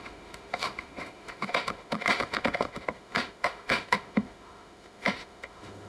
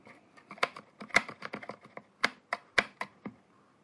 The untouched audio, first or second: second